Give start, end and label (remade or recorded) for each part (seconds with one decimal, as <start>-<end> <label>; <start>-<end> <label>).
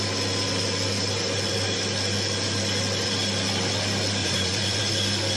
0.0-4.2 recorded; 4.2-4.8 remade; 4.8-5.4 recorded